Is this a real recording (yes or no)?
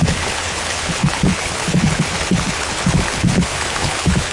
no